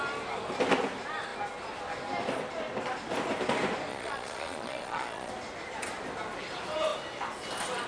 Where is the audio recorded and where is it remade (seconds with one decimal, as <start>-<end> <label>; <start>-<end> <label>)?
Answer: 0.0-3.9 recorded; 3.9-5.3 remade; 5.3-7.9 recorded